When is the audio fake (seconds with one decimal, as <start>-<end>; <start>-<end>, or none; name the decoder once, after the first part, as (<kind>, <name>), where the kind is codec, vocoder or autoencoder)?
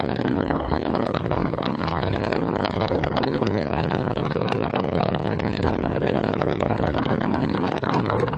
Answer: 0.0-8.4 (codec, SNAC)